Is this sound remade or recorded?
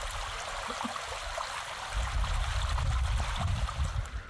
recorded